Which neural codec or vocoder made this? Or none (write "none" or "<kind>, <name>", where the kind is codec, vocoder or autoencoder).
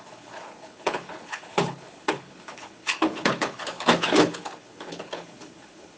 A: codec, HILCodec